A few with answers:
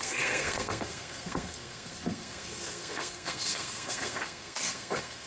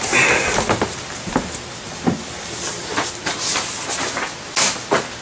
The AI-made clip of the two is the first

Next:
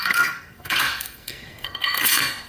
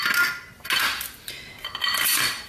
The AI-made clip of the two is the first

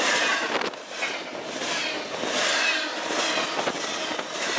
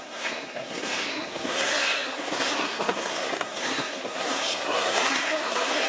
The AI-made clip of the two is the second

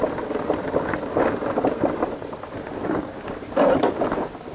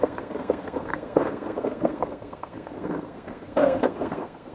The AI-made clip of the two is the second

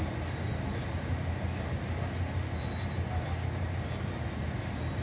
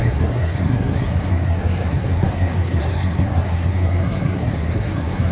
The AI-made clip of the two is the second